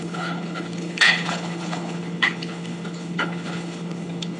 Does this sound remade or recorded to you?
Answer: remade